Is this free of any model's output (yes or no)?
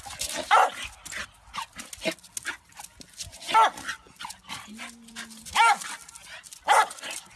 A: yes